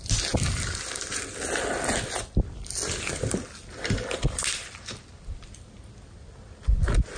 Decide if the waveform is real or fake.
real